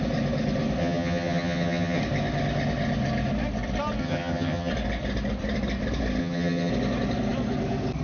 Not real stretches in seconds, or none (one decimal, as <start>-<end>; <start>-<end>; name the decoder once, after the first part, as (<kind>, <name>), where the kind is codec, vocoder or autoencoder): 0.8-2.0 (vocoder, HiFi-GAN); 4.0-4.7; 6.2-6.7